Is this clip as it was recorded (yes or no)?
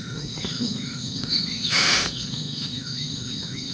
no